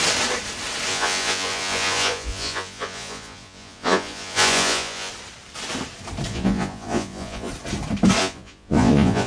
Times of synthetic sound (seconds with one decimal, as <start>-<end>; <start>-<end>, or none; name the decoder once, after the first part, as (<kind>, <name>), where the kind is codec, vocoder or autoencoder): 0.9-5.1 (vocoder, Vocos); 6.3-7.5; 8.2-9.3